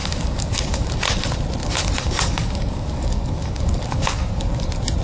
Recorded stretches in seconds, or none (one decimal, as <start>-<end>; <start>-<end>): 0.9-1.6; 4.6-5.0

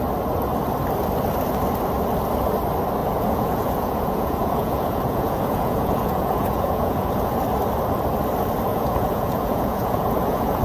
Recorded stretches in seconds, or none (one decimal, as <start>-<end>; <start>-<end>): 0.0-3.0; 7.4-8.7

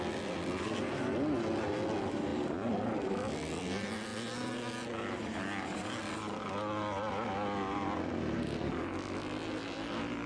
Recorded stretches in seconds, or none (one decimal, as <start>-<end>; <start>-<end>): 0.0-10.3

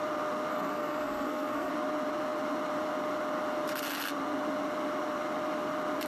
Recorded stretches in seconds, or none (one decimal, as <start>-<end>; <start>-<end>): 0.0-0.5; 1.7-6.1

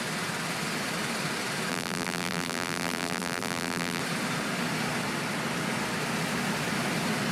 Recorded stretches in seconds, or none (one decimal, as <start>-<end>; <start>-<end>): 0.0-1.7; 4.0-7.3

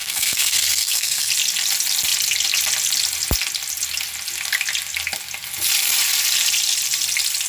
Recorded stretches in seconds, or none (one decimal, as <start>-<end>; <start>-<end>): 1.3-7.5

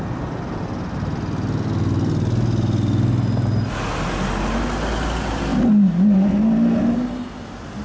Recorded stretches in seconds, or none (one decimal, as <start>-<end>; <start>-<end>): 0.0-7.8

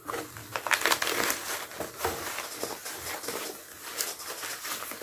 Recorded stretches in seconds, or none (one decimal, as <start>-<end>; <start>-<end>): 0.0-5.0